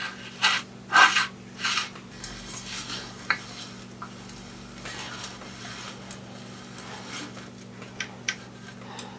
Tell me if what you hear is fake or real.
real